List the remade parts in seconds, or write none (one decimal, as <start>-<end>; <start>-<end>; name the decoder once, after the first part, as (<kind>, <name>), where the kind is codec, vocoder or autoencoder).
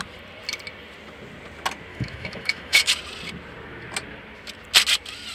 1.9-2.9 (autoencoder, DAC-VAE)